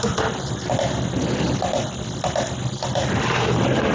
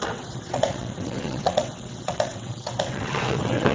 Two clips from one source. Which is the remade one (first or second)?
second